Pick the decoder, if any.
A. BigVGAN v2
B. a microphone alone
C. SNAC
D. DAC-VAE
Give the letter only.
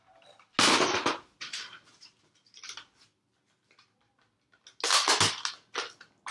B